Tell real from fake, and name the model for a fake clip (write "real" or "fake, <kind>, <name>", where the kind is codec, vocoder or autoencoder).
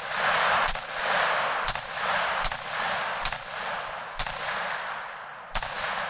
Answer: fake, vocoder, BigVGAN v2